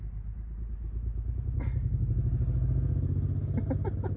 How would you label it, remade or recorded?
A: recorded